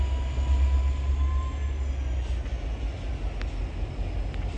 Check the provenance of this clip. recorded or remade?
recorded